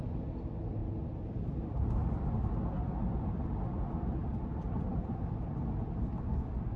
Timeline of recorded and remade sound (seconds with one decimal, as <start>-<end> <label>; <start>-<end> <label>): 0.0-6.8 recorded